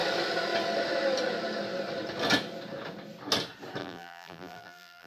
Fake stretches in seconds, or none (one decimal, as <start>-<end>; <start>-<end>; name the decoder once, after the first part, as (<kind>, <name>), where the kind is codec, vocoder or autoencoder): 3.8-5.1 (vocoder, BigVGAN v2)